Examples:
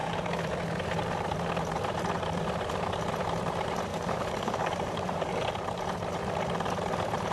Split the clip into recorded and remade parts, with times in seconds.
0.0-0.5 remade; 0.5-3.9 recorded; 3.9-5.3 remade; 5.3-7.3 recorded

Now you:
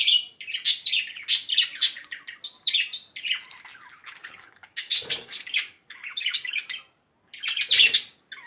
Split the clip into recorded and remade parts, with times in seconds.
0.0-4.0 recorded; 4.0-6.6 remade; 6.6-8.5 recorded

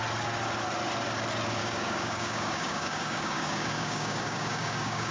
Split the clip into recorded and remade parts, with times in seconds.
0.0-1.6 recorded; 1.6-5.1 remade

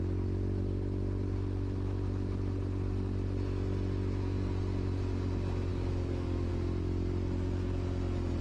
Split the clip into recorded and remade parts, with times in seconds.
0.0-5.7 recorded; 5.7-6.5 remade; 6.5-8.4 recorded

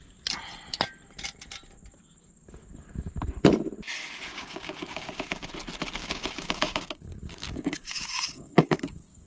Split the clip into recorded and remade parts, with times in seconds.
0.0-4.3 recorded; 4.3-5.5 remade; 5.5-6.0 recorded; 6.0-9.3 remade